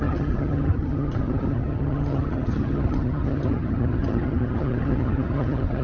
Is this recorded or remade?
remade